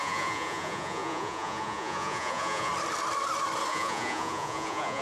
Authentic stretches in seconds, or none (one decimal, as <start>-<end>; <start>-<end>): 2.7-3.7